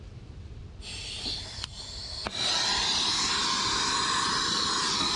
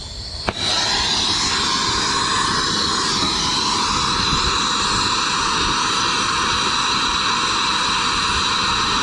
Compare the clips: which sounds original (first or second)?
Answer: second